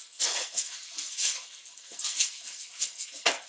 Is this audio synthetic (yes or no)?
yes